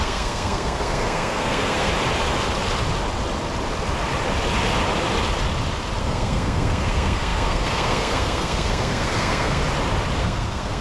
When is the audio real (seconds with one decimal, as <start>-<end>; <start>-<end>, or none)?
1.9-6.0; 9.6-10.2